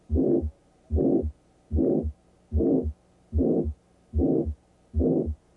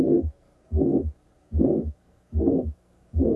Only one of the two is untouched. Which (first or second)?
first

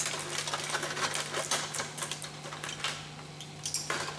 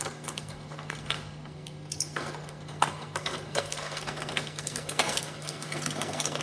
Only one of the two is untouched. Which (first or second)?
first